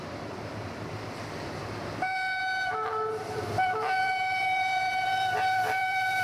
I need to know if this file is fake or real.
fake